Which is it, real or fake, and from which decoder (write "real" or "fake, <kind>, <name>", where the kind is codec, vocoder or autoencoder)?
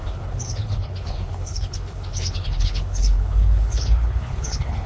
fake, codec, HILCodec